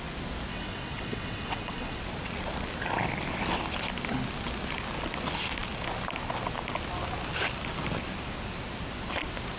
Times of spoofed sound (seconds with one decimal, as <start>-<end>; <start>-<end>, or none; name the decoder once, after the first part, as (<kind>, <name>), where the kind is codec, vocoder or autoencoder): 0.5-2.0 (vocoder, WaveNeXt)